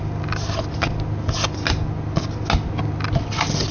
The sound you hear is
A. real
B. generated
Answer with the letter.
A